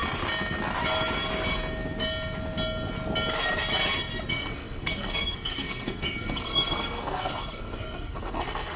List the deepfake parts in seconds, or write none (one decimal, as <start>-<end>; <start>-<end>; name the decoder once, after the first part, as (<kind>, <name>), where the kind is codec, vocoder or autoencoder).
4.3-8.8 (codec, SNAC)